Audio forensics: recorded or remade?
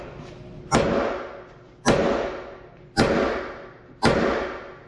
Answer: recorded